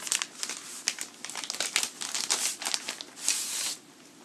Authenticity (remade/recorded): recorded